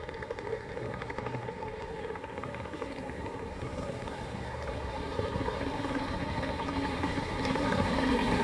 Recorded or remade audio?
remade